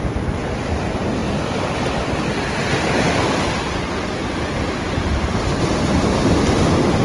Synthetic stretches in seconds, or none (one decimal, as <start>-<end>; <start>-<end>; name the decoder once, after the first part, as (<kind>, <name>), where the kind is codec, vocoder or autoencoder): none